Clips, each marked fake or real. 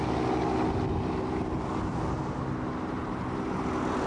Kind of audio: real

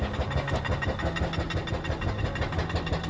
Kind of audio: real